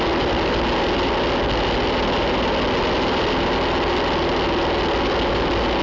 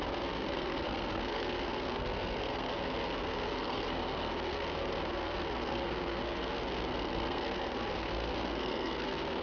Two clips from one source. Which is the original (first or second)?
first